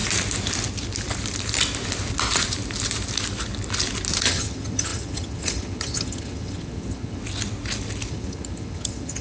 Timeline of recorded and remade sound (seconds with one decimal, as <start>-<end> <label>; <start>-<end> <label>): 0.0-4.2 recorded; 4.2-7.2 remade; 7.2-8.1 recorded; 8.1-9.2 remade